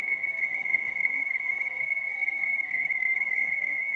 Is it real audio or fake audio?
fake